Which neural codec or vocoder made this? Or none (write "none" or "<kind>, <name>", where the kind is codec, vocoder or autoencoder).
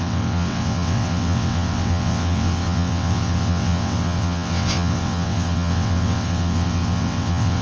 vocoder, WaveNeXt